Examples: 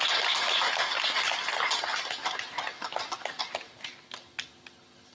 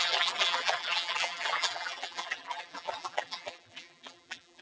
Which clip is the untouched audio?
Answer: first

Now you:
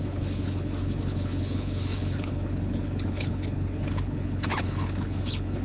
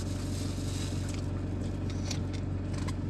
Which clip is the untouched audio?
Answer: second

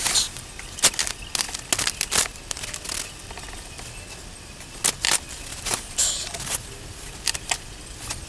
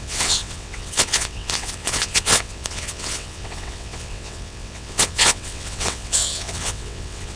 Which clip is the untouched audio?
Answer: first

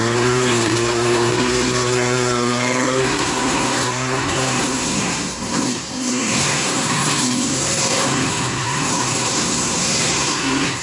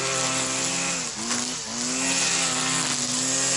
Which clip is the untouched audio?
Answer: second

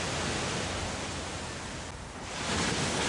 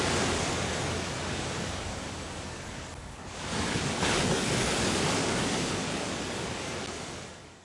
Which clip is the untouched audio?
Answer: first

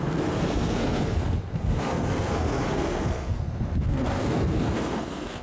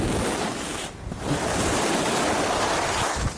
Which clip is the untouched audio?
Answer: second